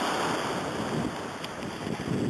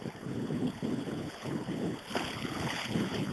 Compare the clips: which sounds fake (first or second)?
second